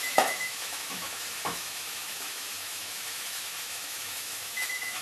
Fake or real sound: fake